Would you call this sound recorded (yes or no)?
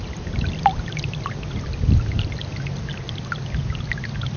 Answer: yes